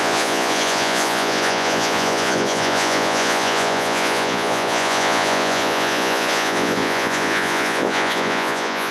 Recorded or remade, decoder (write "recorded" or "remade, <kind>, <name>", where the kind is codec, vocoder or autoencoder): remade, vocoder, Vocos